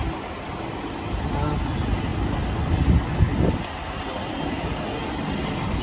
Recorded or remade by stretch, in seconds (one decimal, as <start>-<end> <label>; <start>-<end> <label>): 0.0-5.8 recorded